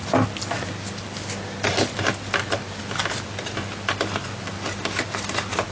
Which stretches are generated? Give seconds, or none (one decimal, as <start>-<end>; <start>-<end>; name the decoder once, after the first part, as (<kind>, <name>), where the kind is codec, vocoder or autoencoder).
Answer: none